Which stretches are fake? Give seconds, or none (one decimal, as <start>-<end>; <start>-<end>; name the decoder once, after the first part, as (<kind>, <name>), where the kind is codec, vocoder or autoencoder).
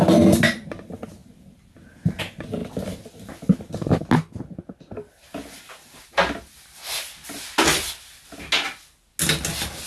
none